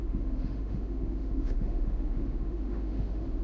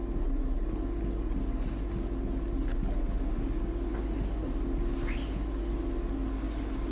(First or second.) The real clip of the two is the second